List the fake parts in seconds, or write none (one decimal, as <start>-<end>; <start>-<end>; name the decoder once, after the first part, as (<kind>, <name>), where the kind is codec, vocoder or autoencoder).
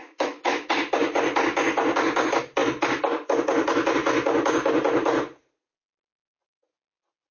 0.0-0.7 (autoencoder, DAC-VAE)